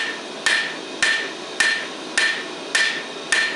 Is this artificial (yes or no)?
no